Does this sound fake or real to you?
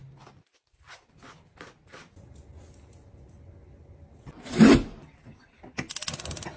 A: real